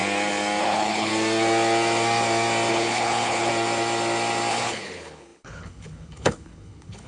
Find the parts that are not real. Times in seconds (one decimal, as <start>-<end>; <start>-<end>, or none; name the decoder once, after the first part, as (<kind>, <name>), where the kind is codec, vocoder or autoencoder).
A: 0.6-1.1 (codec, HILCodec); 2.7-3.5; 4.5-7.1